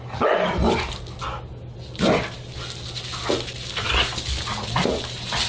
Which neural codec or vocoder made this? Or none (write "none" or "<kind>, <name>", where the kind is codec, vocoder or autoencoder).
none